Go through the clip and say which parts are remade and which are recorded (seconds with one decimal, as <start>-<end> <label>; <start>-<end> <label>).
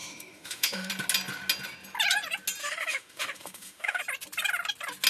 0.0-0.9 remade; 0.9-2.6 recorded; 2.6-4.0 remade; 4.0-5.1 recorded